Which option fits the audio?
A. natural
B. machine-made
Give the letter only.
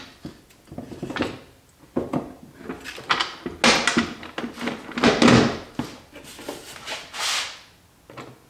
A